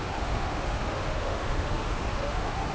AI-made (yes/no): yes